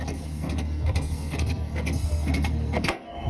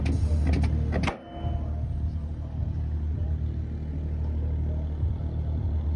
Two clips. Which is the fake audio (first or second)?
first